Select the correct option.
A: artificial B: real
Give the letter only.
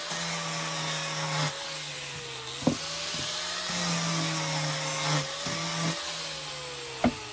B